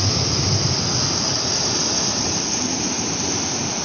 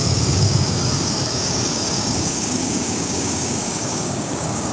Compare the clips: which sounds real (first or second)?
first